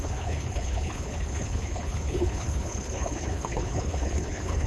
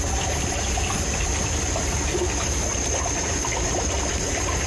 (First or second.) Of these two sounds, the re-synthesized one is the first